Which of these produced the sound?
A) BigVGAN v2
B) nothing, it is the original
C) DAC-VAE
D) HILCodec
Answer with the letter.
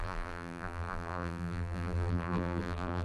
A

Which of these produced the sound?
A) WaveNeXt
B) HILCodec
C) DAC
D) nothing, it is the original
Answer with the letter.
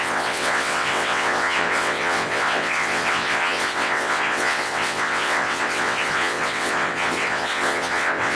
A